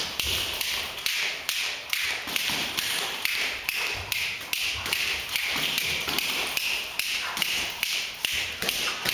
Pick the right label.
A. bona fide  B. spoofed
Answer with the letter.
A